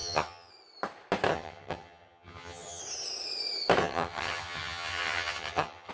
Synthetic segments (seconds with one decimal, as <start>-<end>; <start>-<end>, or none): 0.0-0.5; 1.3-2.8; 3.8-5.9